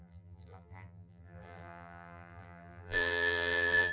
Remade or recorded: remade